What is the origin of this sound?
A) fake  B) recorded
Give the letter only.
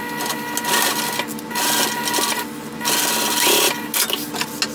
B